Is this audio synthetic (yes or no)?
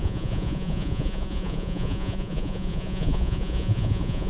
yes